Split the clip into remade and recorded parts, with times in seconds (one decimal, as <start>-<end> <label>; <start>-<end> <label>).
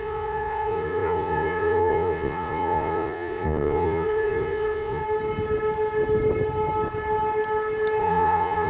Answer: 0.0-5.0 remade; 5.0-8.0 recorded; 8.0-8.7 remade